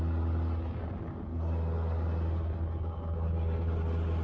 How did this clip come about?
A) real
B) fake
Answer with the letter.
A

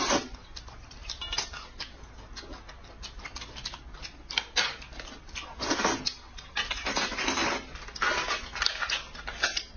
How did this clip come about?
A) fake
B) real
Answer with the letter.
B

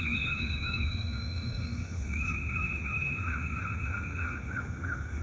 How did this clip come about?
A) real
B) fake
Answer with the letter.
B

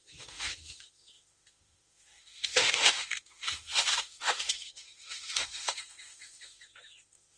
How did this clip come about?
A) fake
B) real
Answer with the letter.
A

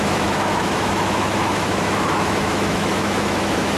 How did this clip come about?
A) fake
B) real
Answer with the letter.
A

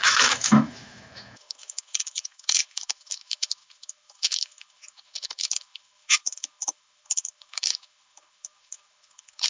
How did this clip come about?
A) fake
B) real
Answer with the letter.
A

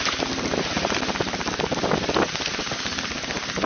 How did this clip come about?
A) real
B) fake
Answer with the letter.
A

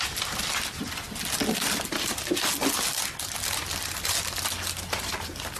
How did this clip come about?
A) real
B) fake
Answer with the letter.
A